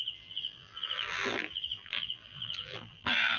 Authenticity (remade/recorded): remade